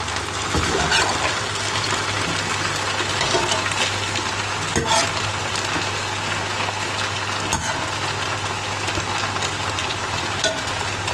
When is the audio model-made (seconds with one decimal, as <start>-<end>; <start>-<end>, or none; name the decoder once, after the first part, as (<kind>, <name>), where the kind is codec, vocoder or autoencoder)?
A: 9.8-10.6 (vocoder, BigVGAN v2)